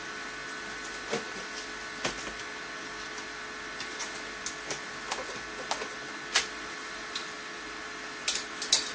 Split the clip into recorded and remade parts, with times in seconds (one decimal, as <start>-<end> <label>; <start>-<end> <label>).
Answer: 0.0-8.9 recorded